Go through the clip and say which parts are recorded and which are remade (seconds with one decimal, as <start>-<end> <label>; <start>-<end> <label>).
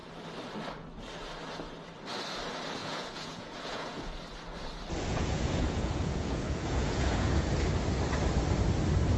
0.0-2.8 recorded; 2.8-4.1 remade; 4.1-5.1 recorded; 5.1-7.5 remade; 7.5-9.2 recorded